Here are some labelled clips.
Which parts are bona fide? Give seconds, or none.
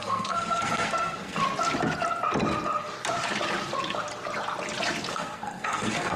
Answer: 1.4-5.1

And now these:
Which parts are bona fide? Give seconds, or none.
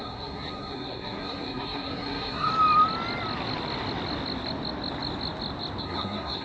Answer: 2.5-5.8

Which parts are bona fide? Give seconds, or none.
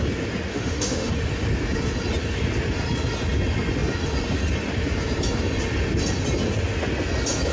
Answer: 0.0-0.5; 1.1-7.5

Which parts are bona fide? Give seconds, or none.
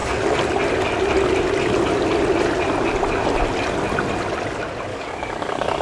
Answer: 0.0-4.9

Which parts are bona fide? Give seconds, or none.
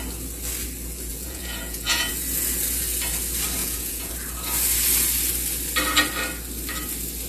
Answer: 0.0-1.1; 2.1-3.6; 4.1-7.3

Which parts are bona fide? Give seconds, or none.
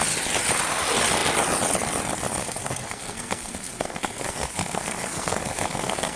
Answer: 0.0-2.4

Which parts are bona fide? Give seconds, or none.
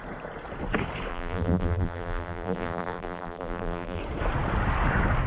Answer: 0.0-1.1; 4.0-5.3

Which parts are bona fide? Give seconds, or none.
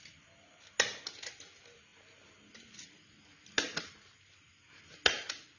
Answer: 0.0-5.6